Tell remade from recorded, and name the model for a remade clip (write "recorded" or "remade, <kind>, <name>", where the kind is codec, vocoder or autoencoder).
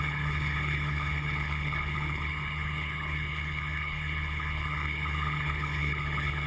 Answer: remade, codec, HILCodec